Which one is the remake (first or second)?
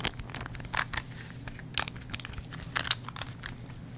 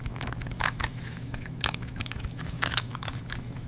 second